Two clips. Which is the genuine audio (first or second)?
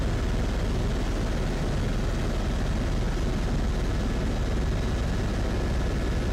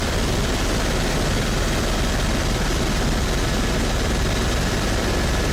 first